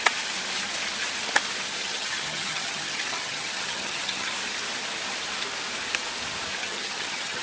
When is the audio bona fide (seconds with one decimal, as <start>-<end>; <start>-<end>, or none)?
0.0-1.8; 4.3-6.6